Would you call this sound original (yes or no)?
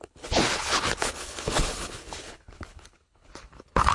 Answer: no